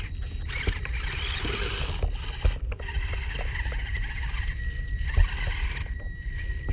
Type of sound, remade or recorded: remade